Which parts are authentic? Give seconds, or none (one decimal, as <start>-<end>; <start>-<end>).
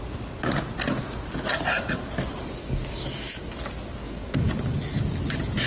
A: 0.0-2.6; 3.6-4.0; 4.5-5.7